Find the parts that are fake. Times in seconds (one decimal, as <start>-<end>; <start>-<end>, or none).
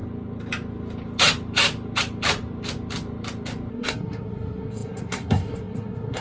3.7-6.2